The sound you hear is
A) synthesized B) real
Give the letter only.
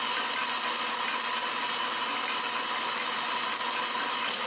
B